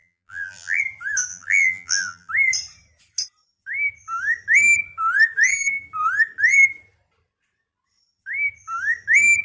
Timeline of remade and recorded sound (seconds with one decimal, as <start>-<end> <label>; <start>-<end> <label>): 0.0-0.8 remade; 0.8-1.3 recorded; 1.3-2.3 remade; 2.3-9.4 recorded